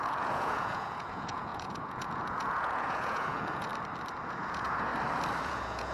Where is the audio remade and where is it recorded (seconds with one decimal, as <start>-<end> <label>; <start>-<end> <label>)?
0.0-3.7 remade; 3.7-4.3 recorded; 4.3-4.9 remade; 4.9-5.4 recorded; 5.4-5.9 remade